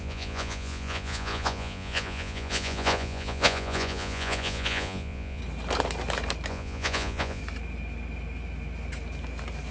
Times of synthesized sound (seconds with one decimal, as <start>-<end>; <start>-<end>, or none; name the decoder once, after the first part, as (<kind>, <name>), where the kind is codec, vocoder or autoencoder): 0.0-5.4 (vocoder, Vocos); 6.5-7.4